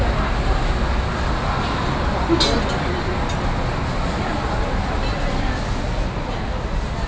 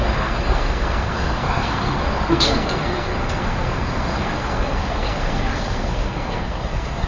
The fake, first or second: second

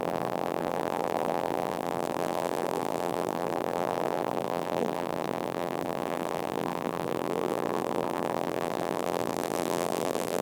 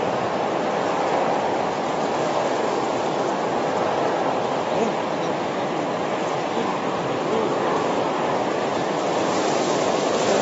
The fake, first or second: first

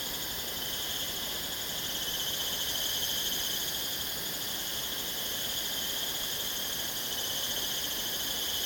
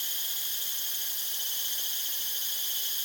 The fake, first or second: second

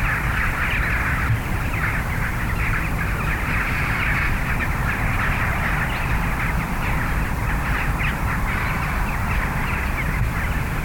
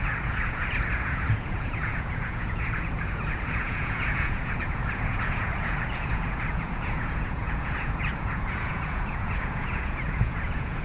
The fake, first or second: second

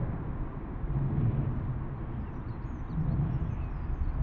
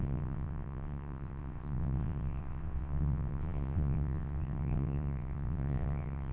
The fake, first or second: second